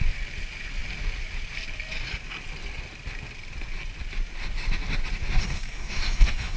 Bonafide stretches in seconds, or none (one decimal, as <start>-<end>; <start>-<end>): 0.0-5.4